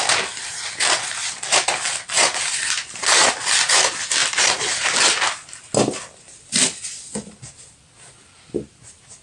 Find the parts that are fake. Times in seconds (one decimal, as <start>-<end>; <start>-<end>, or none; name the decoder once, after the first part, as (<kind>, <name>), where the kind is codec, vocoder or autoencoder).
none